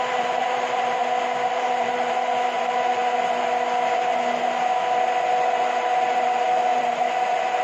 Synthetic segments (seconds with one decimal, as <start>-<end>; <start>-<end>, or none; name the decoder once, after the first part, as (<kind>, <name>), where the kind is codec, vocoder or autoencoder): 0.0-1.0 (vocoder, BigVGAN v2); 1.5-3.0; 5.8-7.6